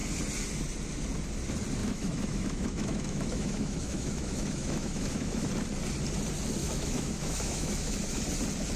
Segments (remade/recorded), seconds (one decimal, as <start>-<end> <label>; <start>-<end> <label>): 0.0-1.8 recorded; 1.8-5.5 remade; 5.5-6.6 recorded; 6.6-8.2 remade; 8.2-8.8 recorded

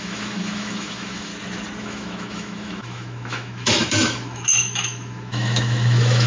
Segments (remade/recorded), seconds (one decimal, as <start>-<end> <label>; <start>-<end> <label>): 0.0-1.3 remade; 1.3-1.8 recorded; 1.8-6.3 remade

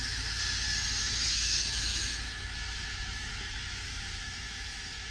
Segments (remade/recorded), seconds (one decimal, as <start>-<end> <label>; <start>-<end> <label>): 0.0-0.4 remade; 0.4-1.0 recorded; 1.0-5.1 remade

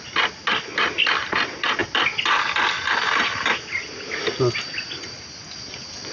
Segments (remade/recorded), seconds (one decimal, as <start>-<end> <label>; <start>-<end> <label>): 0.0-6.1 recorded

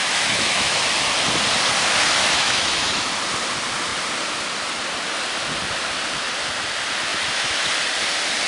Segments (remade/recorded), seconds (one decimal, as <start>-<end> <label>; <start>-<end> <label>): 0.0-0.8 remade; 0.8-2.2 recorded; 2.2-3.1 remade; 3.1-7.1 recorded; 7.1-7.7 remade; 7.7-8.5 recorded